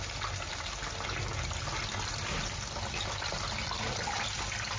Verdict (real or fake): real